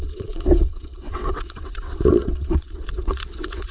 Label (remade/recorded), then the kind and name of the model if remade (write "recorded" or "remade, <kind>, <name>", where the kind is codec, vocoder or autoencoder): remade, vocoder, WaveNeXt